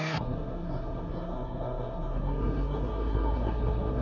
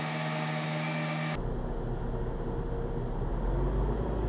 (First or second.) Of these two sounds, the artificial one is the first